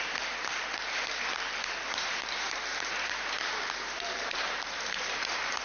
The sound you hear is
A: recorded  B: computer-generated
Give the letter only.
B